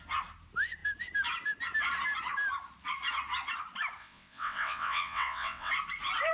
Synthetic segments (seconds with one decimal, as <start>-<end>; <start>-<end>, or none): 4.0-5.7